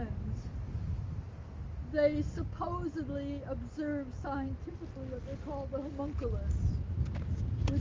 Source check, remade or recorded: recorded